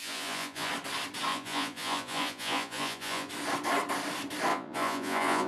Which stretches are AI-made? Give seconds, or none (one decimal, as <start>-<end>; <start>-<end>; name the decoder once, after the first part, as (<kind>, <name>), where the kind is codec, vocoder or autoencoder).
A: 0.0-0.7 (vocoder, Vocos); 1.3-3.3; 4.5-5.5